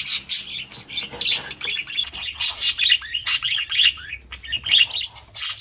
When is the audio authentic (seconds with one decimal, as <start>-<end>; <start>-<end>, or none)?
0.0-2.0; 2.8-3.2; 4.1-5.6